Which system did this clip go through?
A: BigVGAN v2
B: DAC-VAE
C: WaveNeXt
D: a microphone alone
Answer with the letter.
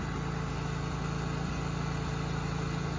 D